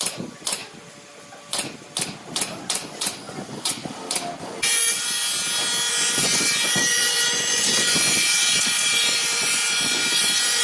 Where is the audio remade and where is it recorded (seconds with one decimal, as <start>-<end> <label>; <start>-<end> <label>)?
0.0-0.6 remade; 0.6-2.7 recorded; 2.7-3.8 remade; 3.8-4.4 recorded; 4.4-5.2 remade; 5.2-5.9 recorded; 5.9-10.6 remade